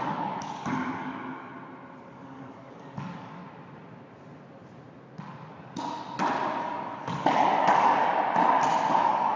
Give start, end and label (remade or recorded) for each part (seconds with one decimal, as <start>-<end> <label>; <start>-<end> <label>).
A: 0.0-1.5 remade; 1.5-2.1 recorded; 2.1-3.4 remade; 3.4-6.6 recorded; 6.6-8.1 remade; 8.1-8.9 recorded; 8.9-9.4 remade

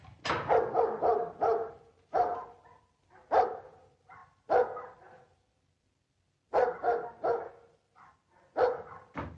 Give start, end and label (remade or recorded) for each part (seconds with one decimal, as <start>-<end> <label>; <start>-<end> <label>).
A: 0.0-9.4 recorded

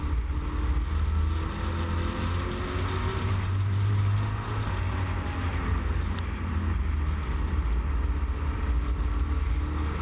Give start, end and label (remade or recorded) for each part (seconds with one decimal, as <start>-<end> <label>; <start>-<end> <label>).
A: 0.0-3.1 recorded; 3.1-6.9 remade; 6.9-10.0 recorded

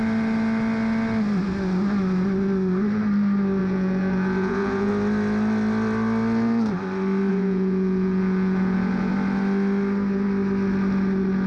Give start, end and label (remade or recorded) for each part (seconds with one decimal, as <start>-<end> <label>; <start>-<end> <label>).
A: 0.0-3.6 recorded; 3.6-4.9 remade; 4.9-7.3 recorded; 7.3-9.1 remade; 9.1-11.5 recorded

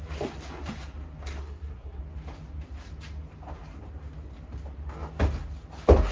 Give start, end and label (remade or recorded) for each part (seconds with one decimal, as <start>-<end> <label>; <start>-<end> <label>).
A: 0.0-1.4 recorded; 1.4-2.0 remade; 2.0-6.1 recorded

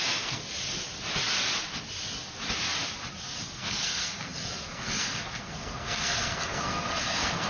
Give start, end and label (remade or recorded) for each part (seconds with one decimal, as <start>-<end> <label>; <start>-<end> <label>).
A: 0.0-0.4 remade; 0.4-3.4 recorded; 3.4-7.5 remade

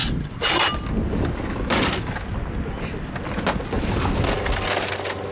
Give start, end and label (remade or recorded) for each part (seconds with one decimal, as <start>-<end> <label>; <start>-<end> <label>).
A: 0.0-5.3 recorded

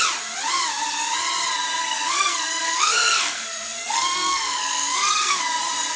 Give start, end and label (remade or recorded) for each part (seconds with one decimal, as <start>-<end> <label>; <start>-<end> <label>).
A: 0.0-1.8 recorded; 1.8-5.4 remade; 5.4-6.0 recorded